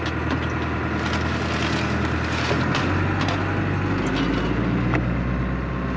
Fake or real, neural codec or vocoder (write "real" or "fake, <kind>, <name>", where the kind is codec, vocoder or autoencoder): real